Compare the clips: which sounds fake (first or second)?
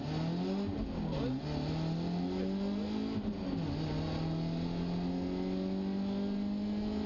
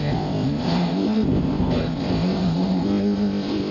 second